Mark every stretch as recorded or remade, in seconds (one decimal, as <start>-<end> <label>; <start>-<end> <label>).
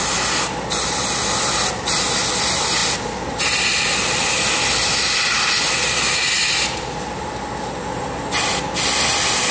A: 0.0-9.5 recorded